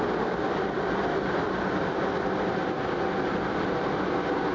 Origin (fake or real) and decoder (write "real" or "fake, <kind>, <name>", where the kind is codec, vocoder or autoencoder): real